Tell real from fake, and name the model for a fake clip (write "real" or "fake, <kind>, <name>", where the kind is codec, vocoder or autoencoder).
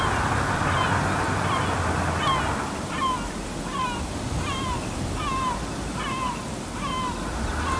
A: real